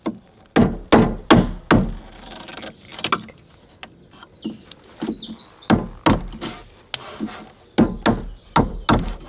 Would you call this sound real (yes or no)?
yes